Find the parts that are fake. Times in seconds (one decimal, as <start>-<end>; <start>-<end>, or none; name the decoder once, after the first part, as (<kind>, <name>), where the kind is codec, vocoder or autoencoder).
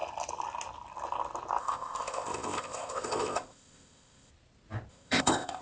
1.6-4.3 (codec, ZipCodec); 4.9-5.6